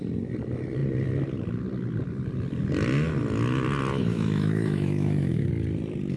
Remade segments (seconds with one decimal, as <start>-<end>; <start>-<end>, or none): 4.1-5.5